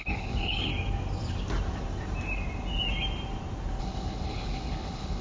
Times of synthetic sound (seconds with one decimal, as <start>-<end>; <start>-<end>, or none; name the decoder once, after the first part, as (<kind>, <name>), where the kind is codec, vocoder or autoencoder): 0.0-0.7 (codec, HILCodec); 3.8-5.2